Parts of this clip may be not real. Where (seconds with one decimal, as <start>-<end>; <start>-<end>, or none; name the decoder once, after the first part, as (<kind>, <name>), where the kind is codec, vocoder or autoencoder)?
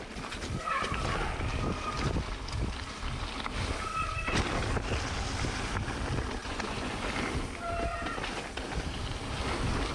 6.4-7.1 (vocoder, Vocos)